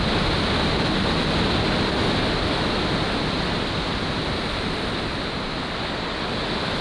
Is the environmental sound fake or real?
real